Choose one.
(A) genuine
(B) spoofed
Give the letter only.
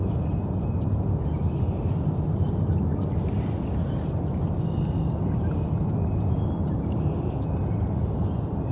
A